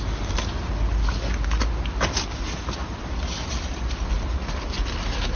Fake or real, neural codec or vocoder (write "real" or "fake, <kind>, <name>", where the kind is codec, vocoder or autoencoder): real